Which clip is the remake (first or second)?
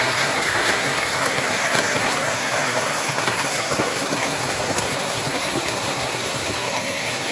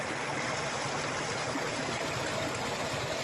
first